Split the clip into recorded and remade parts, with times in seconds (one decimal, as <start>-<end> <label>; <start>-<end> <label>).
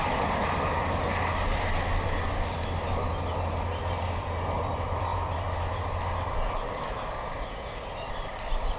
0.0-8.8 recorded